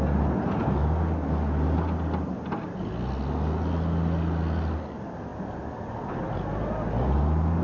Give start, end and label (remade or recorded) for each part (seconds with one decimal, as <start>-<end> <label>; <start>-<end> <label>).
0.0-7.6 recorded